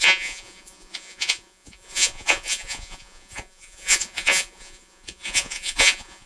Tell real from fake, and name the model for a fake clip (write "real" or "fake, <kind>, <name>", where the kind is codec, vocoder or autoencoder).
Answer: fake, vocoder, Vocos